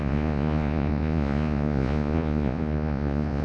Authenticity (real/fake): fake